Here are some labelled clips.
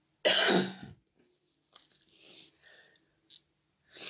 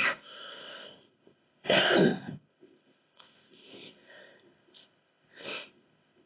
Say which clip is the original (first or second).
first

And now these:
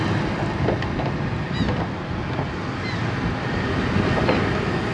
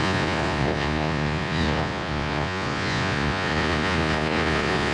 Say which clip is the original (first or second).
first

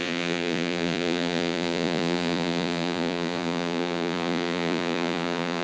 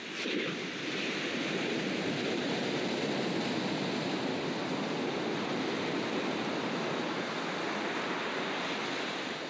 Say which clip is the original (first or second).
second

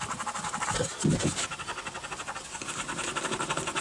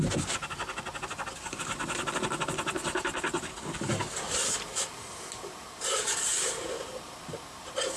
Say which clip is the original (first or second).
second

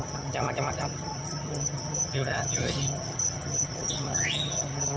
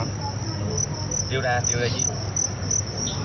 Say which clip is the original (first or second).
second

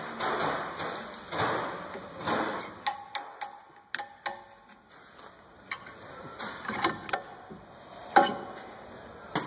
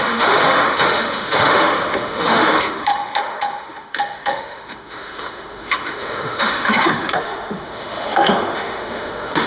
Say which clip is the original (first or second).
first